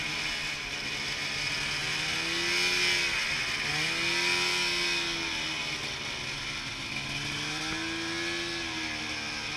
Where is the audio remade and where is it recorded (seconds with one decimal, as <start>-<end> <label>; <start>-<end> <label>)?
0.0-9.6 recorded